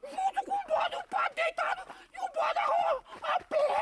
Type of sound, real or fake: real